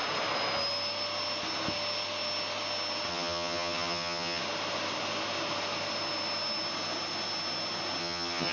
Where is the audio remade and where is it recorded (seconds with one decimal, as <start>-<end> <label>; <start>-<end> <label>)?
0.0-3.1 recorded; 3.1-4.4 remade; 4.4-8.0 recorded; 8.0-8.5 remade